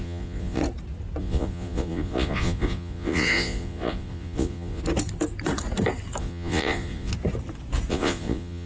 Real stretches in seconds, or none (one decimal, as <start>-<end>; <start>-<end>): 0.6-1.2; 4.8-6.2; 7.1-7.9